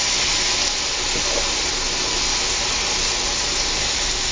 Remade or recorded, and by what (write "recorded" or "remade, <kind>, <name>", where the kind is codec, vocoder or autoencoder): recorded